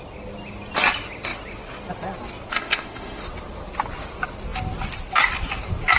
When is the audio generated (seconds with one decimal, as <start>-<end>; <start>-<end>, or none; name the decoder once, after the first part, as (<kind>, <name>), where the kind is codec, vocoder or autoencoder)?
2.5-3.2 (autoencoder, DAC-VAE)